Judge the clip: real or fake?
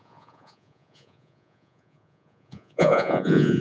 fake